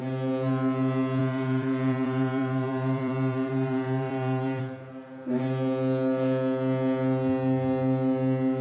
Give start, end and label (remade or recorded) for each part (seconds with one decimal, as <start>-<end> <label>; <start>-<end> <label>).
0.0-1.2 recorded; 1.2-4.6 remade; 4.6-8.6 recorded